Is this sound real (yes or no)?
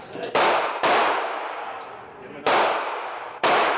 yes